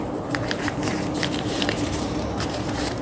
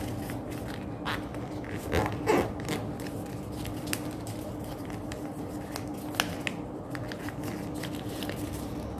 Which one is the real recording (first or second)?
second